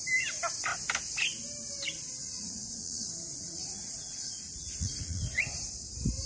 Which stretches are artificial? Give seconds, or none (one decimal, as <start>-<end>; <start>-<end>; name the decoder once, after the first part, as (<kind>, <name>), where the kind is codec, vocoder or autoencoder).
2.2-3.0 (vocoder, Vocos); 3.4-5.2

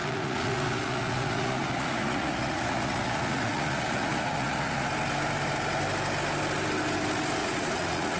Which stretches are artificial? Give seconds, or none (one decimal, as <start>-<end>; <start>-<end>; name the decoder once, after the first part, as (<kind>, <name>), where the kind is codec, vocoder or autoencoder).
0.0-4.9 (vocoder, Vocos); 7.4-8.2

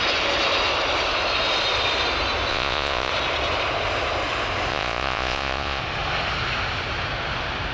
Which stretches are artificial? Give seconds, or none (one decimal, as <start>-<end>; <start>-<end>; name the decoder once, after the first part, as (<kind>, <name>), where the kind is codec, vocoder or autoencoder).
2.5-3.1 (vocoder, Vocos); 4.7-5.8

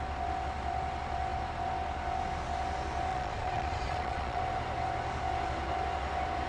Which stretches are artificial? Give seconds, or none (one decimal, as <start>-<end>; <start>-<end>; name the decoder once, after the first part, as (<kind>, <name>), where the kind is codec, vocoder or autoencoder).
3.1-4.4 (vocoder, Vocos)

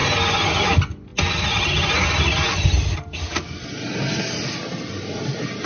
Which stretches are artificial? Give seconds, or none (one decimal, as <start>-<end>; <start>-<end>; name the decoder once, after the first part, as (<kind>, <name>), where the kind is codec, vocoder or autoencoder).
none